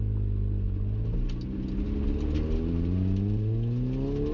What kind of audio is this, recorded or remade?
recorded